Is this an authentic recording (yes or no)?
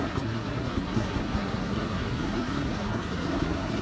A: no